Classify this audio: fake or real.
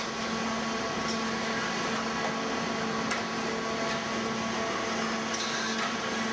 real